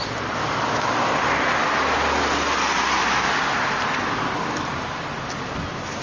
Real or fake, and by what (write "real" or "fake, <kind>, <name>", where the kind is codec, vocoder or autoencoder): real